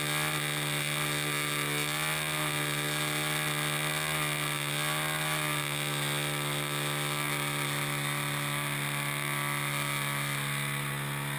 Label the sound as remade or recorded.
recorded